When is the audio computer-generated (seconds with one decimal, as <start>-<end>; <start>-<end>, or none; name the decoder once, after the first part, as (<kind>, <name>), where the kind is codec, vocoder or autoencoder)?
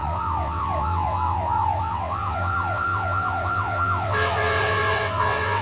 0.0-5.6 (vocoder, WaveNeXt)